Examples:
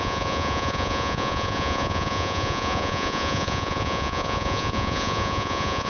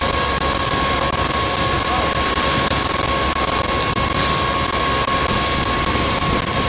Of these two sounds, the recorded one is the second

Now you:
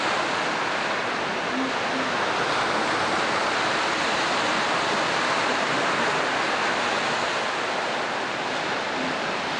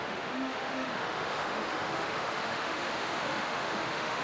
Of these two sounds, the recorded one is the first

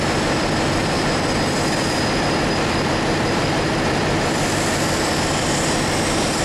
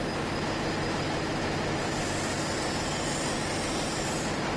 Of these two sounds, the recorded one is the second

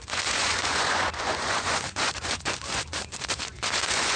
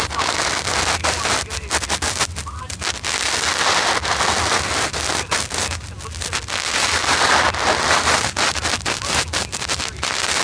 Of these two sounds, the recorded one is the second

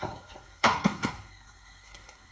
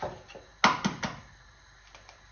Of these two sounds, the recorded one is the second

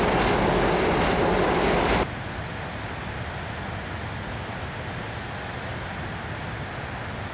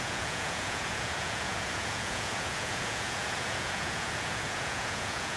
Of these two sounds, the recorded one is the first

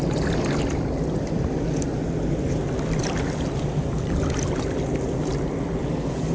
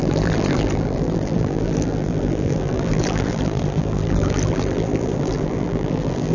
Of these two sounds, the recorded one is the first